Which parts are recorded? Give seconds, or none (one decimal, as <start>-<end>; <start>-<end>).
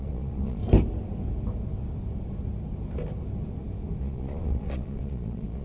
0.6-4.0